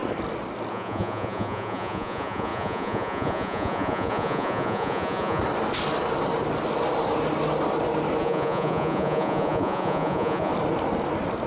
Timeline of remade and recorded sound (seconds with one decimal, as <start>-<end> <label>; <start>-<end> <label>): 0.0-0.7 recorded; 0.7-5.4 remade; 5.4-8.2 recorded; 8.2-10.5 remade; 10.5-11.5 recorded